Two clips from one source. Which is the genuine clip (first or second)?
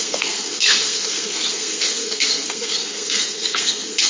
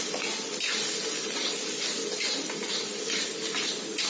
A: second